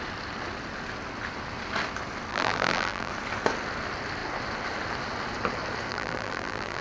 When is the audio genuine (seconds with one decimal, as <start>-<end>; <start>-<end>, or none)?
0.0-2.3; 3.1-5.9